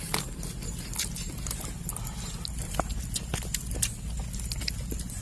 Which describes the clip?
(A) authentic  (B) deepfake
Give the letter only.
A